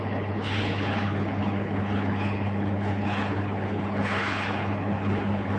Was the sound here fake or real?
fake